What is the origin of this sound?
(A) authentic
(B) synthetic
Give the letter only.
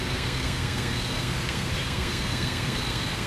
B